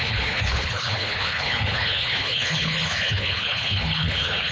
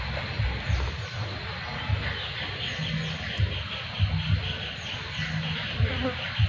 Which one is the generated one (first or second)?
first